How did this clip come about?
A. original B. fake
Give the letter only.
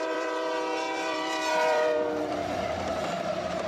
B